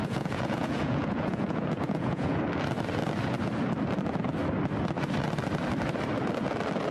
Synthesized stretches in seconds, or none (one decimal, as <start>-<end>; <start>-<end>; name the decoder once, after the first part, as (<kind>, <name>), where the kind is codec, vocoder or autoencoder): 0.0-2.4 (vocoder, Vocos)

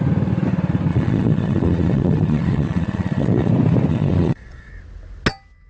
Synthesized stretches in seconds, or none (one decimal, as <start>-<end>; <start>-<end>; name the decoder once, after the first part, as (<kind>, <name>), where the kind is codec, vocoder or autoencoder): 0.9-3.5 (vocoder, Vocos); 3.9-4.7

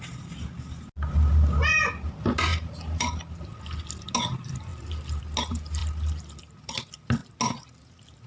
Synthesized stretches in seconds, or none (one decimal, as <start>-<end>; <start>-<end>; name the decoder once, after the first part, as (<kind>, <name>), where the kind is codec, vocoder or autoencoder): none

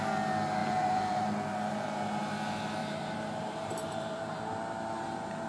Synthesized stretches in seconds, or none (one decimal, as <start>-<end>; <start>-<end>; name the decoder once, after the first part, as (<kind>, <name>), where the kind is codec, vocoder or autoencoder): 0.6-2.2 (vocoder, BigVGAN v2); 2.8-4.4

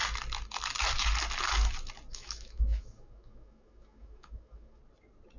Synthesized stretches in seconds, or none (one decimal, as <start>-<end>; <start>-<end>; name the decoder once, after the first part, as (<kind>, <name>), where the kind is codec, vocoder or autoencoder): 2.1-4.8 (autoencoder, DAC-VAE)